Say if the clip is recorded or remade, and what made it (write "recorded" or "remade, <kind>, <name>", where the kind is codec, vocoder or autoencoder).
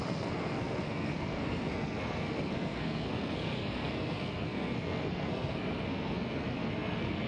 remade, codec, SNAC